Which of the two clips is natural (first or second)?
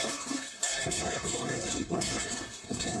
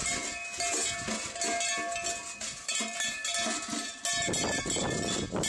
second